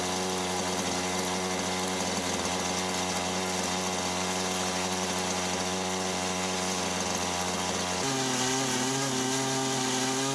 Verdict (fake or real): real